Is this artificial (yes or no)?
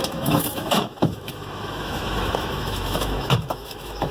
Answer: yes